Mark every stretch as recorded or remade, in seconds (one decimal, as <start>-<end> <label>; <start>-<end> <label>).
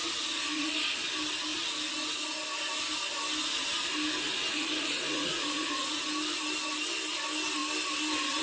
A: 0.0-0.7 remade; 0.7-4.5 recorded; 4.5-6.0 remade; 6.0-8.4 recorded